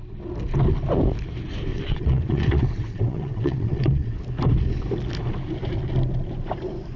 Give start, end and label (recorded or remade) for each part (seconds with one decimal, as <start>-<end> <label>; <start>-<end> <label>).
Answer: 0.0-1.7 recorded; 1.7-4.2 remade; 4.2-7.0 recorded